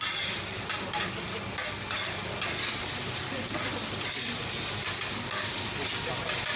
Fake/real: real